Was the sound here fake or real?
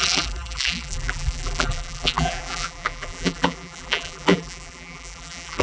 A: fake